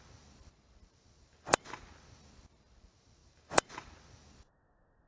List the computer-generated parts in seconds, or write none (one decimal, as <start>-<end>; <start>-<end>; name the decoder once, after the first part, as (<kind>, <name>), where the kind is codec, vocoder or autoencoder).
3.2-3.9 (vocoder, BigVGAN v2)